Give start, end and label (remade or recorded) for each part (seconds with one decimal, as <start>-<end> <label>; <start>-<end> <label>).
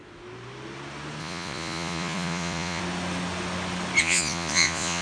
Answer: 0.0-1.2 recorded; 1.2-2.8 remade; 2.8-4.0 recorded; 4.0-5.0 remade